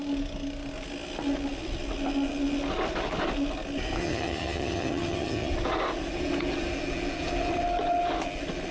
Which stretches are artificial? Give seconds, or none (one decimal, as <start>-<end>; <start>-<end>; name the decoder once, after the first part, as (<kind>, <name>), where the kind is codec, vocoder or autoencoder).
4.0-5.5 (vocoder, HiFi-GAN)